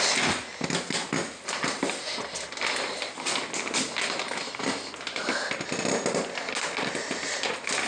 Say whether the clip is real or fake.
real